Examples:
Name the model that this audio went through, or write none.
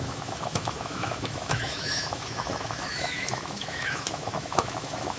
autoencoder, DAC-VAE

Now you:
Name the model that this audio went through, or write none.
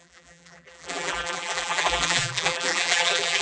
vocoder, BigVGAN v2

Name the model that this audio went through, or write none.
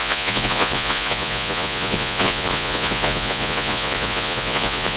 vocoder, Vocos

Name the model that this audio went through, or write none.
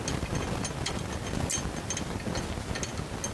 none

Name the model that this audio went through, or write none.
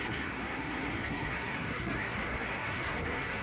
codec, SNAC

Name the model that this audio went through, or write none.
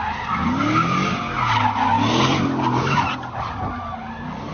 none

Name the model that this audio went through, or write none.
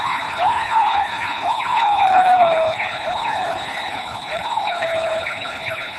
codec, HILCodec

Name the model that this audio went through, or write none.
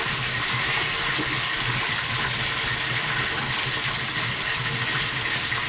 none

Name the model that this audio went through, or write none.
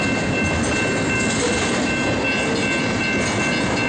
none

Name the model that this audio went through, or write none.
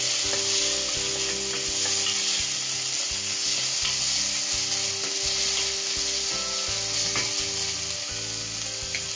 none